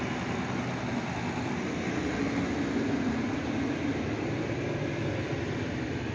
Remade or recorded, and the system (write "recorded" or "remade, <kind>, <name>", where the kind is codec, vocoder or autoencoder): recorded